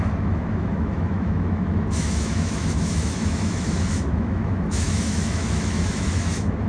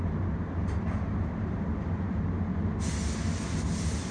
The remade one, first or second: first